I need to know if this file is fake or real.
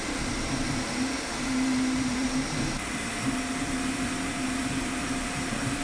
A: fake